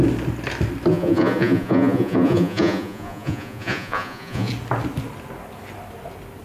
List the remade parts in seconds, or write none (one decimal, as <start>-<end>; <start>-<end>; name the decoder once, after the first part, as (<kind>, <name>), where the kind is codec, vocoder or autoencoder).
0.9-4.5 (vocoder, Vocos)